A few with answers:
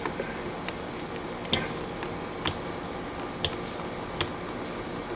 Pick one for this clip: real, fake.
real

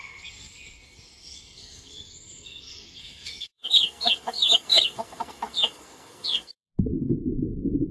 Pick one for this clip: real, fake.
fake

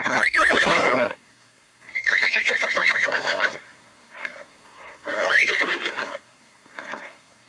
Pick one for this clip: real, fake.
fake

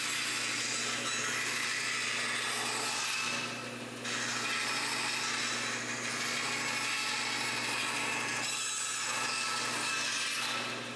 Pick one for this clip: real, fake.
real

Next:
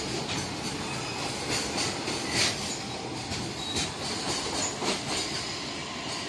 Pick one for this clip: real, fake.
real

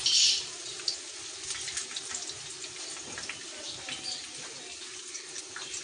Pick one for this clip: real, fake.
real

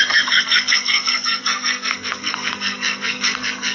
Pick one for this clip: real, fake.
fake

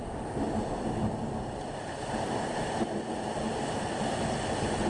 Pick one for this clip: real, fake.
real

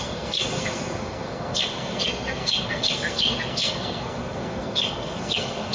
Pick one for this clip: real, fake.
fake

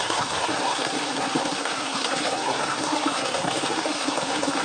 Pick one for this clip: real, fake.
fake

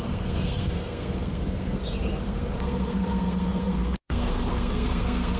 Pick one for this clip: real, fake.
fake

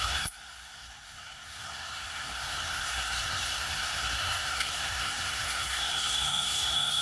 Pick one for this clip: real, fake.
fake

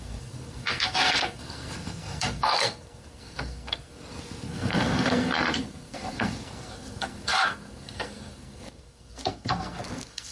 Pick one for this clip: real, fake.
fake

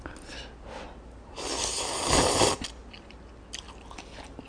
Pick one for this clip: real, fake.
real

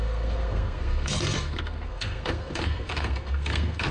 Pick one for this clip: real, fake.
fake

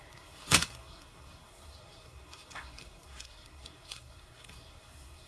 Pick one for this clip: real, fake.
fake